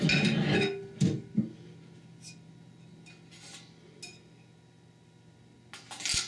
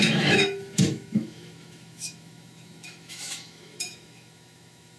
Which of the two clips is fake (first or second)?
second